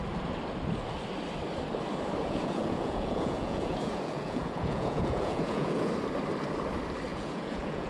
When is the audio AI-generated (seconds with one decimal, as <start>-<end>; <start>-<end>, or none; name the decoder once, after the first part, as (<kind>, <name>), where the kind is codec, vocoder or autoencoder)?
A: 2.2-5.9 (vocoder, Vocos); 7.1-7.9